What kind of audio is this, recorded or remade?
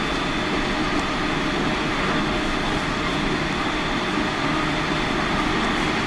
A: recorded